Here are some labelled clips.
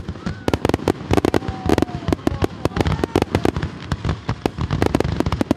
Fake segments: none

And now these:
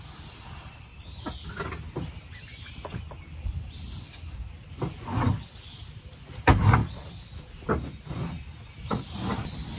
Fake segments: 0.9-1.7 (vocoder, BigVGAN v2)